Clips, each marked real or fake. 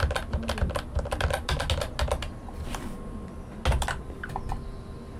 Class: real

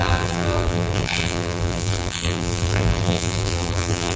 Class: fake